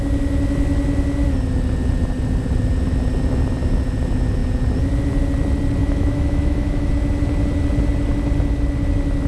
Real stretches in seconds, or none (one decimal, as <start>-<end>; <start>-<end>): 0.0-5.8; 6.9-9.3